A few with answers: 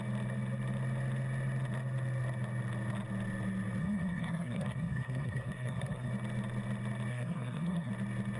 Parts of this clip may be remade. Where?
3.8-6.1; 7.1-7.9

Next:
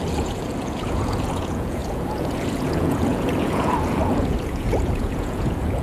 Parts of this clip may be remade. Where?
0.0-5.8